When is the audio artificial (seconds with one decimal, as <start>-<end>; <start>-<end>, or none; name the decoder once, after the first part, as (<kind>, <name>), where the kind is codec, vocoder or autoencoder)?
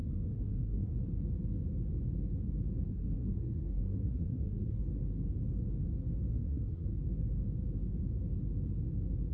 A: 0.0-0.9 (codec, SNAC); 2.9-4.8; 6.3-7.0